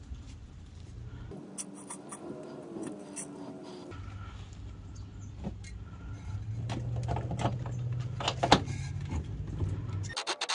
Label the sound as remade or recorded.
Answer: recorded